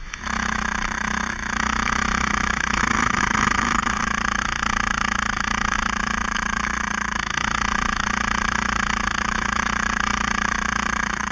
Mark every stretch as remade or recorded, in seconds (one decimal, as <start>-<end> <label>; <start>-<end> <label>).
0.0-11.3 remade